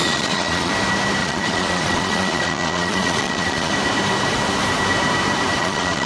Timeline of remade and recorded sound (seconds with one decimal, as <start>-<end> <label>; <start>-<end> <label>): 0.0-0.7 remade; 0.7-1.2 recorded; 1.2-3.7 remade; 3.7-5.6 recorded; 5.6-6.1 remade

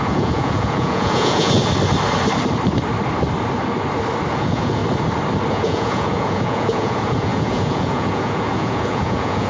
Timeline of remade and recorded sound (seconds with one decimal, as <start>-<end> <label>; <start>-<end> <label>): 0.0-1.6 remade; 1.6-4.3 recorded; 4.3-4.8 remade; 4.8-5.5 recorded; 5.5-9.5 remade